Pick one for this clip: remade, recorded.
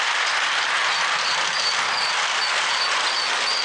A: recorded